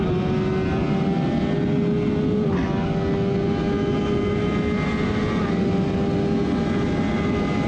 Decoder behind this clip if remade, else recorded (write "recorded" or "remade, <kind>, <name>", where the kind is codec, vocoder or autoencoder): recorded